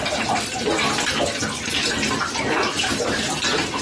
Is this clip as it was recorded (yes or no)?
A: yes